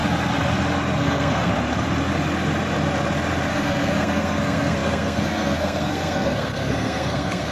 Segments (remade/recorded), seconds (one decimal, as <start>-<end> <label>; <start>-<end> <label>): 0.0-1.0 recorded; 1.0-1.5 remade; 1.5-3.5 recorded; 3.5-7.5 remade